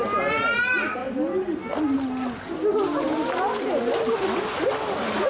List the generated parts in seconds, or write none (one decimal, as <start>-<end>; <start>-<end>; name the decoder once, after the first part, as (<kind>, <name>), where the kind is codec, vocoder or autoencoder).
2.7-3.8 (vocoder, BigVGAN v2)